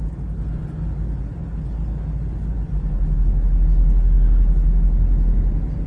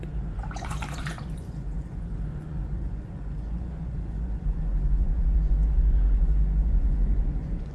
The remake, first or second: second